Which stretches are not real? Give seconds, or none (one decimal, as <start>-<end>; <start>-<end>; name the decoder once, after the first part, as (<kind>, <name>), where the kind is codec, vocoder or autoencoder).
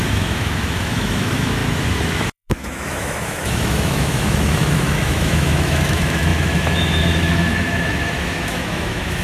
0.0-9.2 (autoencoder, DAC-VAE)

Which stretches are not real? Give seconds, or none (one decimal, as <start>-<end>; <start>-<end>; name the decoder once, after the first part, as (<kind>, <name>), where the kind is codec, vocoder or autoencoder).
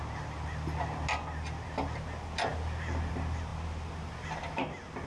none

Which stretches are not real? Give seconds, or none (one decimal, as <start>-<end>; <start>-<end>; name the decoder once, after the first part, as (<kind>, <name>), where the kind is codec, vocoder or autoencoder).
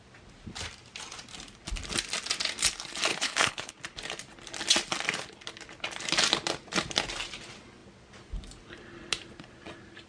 3.1-3.7 (codec, HILCodec)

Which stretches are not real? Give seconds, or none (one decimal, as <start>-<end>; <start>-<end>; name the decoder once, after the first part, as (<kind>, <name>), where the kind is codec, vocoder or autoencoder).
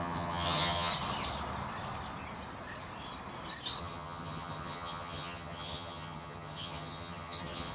0.0-0.9 (vocoder, HiFi-GAN); 3.8-7.7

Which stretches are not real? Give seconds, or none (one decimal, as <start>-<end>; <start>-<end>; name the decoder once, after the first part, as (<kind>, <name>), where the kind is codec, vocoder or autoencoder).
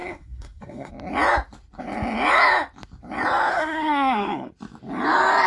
0.0-0.9 (codec, SNAC); 3.5-4.5